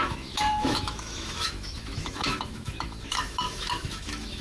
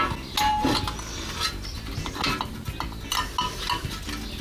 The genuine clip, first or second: second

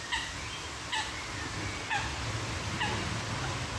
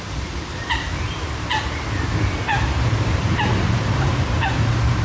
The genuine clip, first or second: first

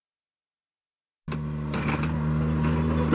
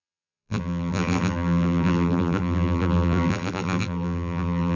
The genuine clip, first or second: first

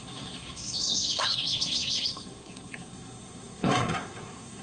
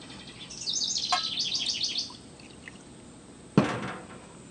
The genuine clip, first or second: second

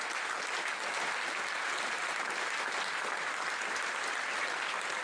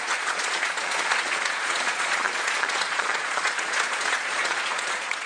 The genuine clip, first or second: first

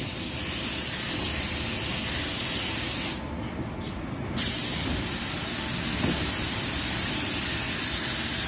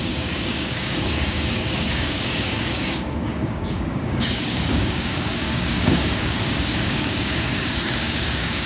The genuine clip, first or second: first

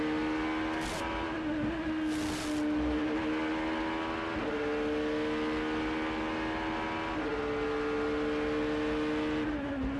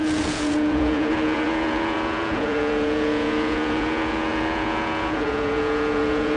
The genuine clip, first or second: first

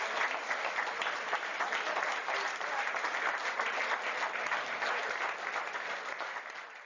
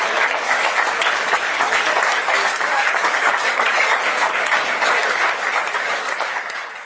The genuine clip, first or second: first